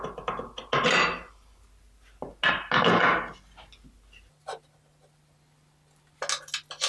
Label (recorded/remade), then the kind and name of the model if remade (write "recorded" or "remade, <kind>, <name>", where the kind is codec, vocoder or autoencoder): recorded